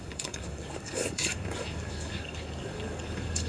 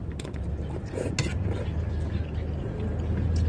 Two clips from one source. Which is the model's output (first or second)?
first